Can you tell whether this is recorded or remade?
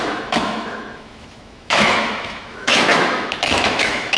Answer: remade